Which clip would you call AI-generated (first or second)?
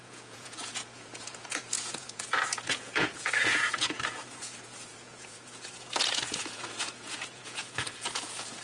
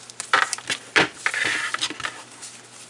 first